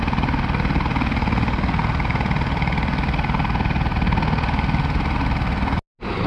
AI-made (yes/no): no